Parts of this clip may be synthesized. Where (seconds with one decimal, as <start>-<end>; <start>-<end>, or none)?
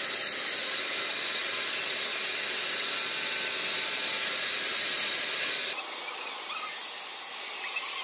none